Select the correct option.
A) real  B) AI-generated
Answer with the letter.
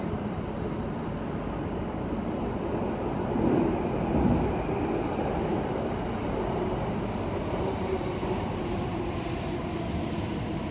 A